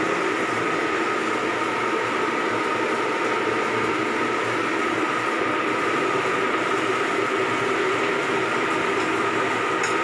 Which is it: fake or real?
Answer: real